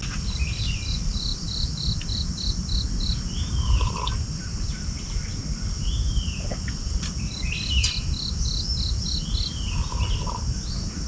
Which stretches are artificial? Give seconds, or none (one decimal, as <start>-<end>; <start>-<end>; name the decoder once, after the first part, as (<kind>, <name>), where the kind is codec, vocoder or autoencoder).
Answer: none